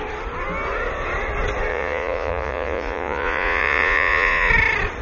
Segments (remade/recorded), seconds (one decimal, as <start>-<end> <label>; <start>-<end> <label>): 0.0-1.7 recorded; 1.7-4.5 remade; 4.5-5.0 recorded